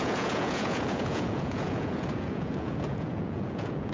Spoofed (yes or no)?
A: yes